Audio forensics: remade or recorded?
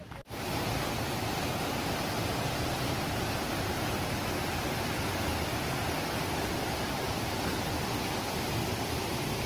recorded